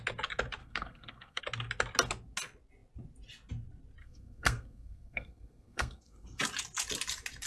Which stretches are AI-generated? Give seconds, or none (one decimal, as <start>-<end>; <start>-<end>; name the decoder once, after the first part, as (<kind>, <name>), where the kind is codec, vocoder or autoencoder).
0.6-1.4 (codec, SNAC); 4.0-6.4